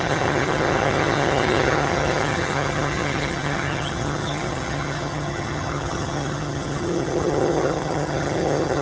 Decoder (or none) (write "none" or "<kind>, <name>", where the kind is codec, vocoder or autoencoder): vocoder, HiFi-GAN